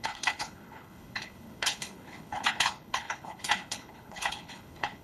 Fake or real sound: fake